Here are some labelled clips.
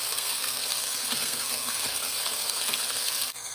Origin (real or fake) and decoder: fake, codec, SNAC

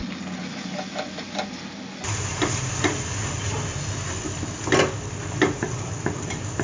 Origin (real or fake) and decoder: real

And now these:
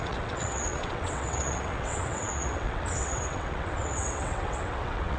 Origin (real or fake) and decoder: fake, vocoder, WaveNeXt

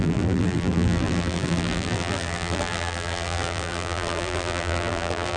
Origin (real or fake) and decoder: fake, vocoder, BigVGAN v2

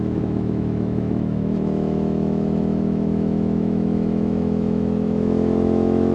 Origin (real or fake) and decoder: fake, autoencoder, DAC-VAE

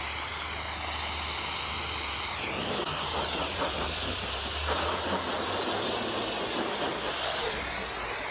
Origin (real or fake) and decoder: real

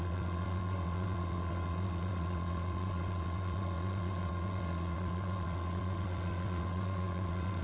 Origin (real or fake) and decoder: fake, vocoder, WaveNeXt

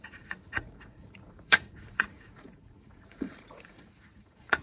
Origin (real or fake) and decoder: fake, vocoder, Vocos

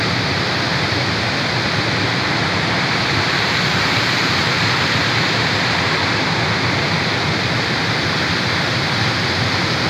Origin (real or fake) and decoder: fake, vocoder, BigVGAN v2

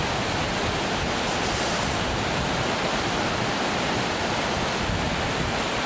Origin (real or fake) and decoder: real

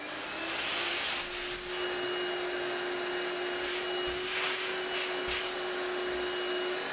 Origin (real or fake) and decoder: real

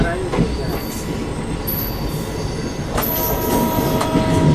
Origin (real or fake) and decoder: real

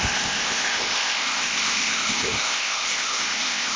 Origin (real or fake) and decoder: fake, codec, ZipCodec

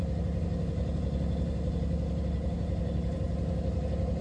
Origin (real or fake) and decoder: real